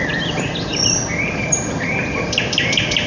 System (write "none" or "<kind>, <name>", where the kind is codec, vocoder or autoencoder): none